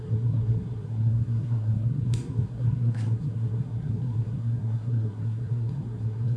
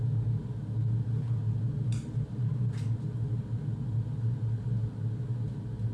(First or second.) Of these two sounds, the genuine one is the second